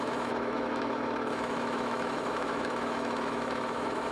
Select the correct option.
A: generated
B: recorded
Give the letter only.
A